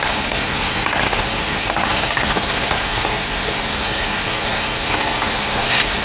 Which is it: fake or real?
fake